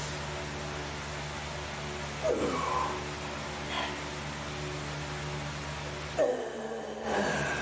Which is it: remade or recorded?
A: recorded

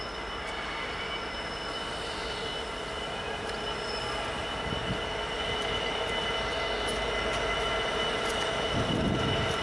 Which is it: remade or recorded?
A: recorded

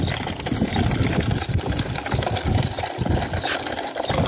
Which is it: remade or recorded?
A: recorded